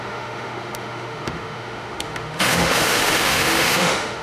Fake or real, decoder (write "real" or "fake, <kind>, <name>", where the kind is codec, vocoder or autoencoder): fake, autoencoder, DAC-VAE